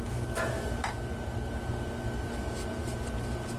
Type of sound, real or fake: real